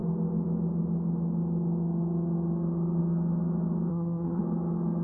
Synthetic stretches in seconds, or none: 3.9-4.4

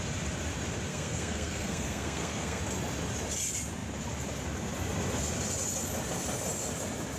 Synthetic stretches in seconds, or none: 0.9-2.6